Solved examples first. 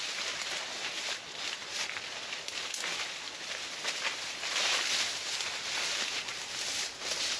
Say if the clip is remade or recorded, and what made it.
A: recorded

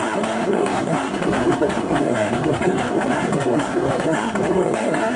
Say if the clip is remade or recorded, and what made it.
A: remade, codec, SNAC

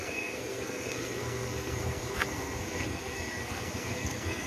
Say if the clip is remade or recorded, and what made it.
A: remade, codec, SNAC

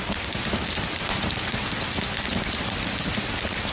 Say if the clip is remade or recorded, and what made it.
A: recorded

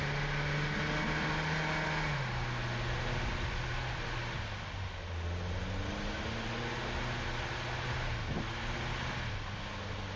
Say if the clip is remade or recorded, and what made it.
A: recorded